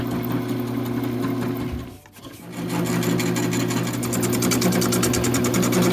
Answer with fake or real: real